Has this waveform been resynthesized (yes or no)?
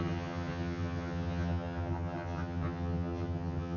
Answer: yes